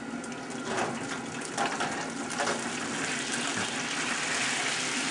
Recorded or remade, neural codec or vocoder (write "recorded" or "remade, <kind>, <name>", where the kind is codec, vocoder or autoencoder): recorded